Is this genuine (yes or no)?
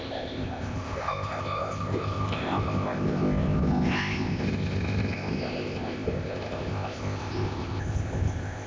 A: no